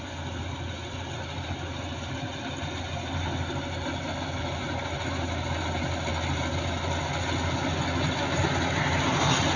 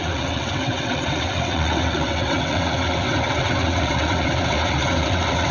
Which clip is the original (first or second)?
first